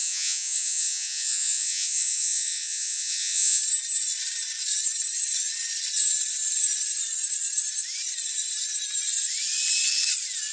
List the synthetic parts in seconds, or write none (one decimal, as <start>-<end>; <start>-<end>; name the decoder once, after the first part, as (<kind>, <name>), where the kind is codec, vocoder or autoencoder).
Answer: 0.0-3.6 (vocoder, Vocos)